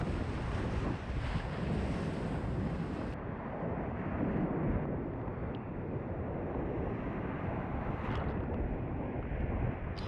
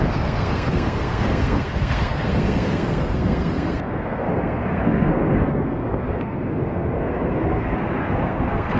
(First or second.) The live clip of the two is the first